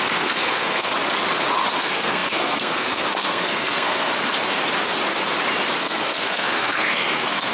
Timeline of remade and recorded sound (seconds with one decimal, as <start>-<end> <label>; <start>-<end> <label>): 0.0-0.9 remade; 0.9-1.8 recorded; 1.8-4.1 remade; 4.1-5.8 recorded; 5.8-7.5 remade